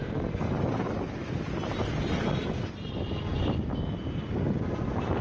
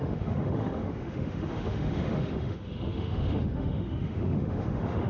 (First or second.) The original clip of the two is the first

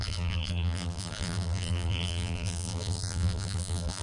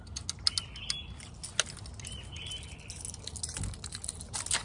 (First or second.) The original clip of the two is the second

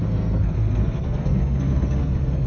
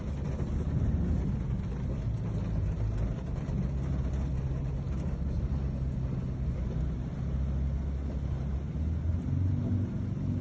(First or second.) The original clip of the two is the second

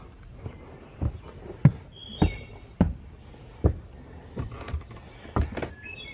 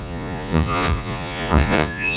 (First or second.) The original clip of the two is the first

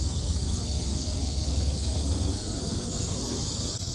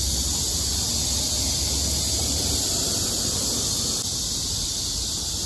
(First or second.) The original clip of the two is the second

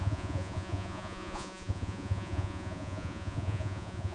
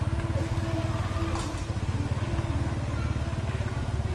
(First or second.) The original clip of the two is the second